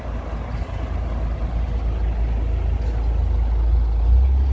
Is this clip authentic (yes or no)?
yes